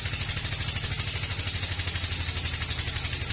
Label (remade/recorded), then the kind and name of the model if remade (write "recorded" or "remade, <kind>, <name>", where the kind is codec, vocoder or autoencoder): recorded